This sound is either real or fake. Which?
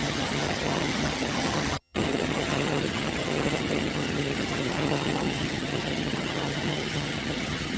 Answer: fake